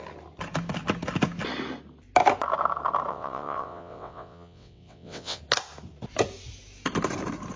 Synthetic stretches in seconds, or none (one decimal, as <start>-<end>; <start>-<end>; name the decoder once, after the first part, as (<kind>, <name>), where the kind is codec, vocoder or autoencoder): 3.1-5.4 (vocoder, WaveNeXt)